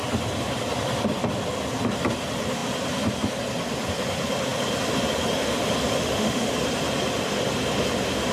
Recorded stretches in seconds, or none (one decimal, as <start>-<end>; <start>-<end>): 0.0-6.0; 6.5-8.3